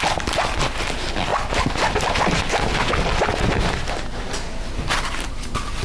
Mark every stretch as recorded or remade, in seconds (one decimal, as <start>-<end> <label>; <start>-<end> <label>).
0.0-5.8 recorded